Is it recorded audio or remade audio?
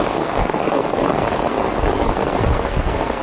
remade